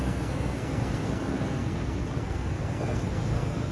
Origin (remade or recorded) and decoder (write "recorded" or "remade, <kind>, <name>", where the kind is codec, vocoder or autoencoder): remade, codec, SNAC